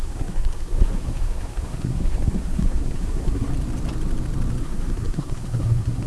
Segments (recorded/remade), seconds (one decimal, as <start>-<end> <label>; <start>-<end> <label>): 0.0-3.5 remade; 3.5-4.6 recorded; 4.6-6.1 remade